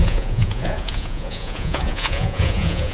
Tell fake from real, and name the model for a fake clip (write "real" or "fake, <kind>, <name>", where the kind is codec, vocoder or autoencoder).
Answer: fake, vocoder, Vocos